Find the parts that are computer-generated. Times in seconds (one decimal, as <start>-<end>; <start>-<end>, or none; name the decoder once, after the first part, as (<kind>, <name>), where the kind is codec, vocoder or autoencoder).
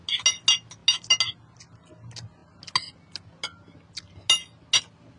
none